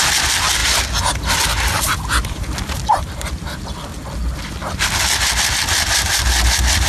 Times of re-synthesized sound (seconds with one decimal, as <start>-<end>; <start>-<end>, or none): 0.0-3.9; 5.5-6.9